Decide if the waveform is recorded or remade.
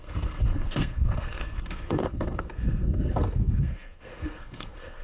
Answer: remade